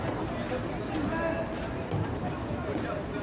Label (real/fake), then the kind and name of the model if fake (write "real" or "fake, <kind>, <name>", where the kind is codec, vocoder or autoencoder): real